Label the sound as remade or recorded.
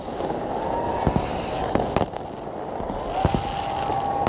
recorded